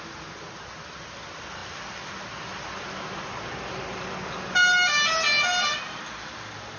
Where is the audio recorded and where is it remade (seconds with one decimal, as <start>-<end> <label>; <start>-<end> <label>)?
0.0-6.8 recorded